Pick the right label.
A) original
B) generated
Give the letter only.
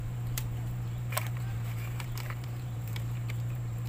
B